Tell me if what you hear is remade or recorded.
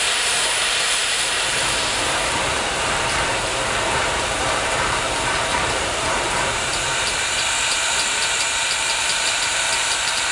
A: remade